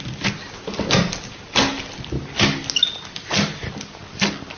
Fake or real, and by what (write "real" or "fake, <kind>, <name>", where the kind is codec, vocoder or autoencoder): real